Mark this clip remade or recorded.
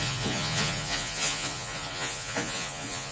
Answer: remade